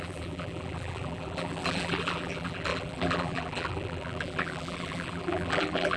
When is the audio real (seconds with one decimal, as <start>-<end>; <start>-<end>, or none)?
none